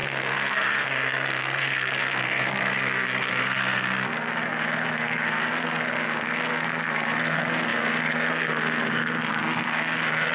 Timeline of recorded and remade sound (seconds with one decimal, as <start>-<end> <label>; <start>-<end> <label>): 0.0-10.3 remade